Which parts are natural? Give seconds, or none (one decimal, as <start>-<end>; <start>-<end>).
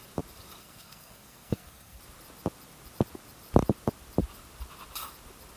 0.0-0.6; 2.0-5.6